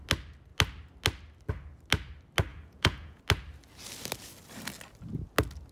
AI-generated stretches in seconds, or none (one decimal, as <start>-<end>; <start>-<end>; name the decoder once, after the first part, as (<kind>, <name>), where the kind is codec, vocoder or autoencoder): 2.5-3.2 (vocoder, Vocos)